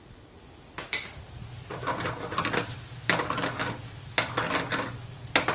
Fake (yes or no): no